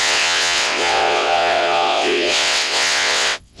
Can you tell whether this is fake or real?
fake